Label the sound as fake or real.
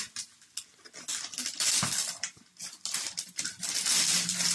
real